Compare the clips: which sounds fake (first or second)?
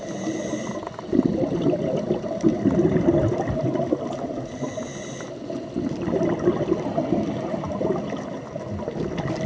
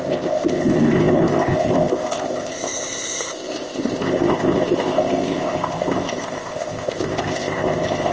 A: second